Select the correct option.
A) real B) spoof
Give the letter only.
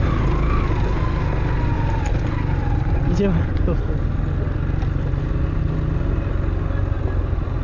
A